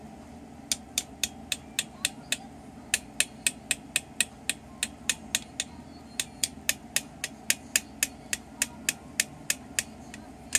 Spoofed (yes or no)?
no